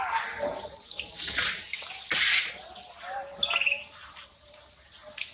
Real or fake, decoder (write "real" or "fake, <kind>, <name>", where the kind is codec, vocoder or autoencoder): real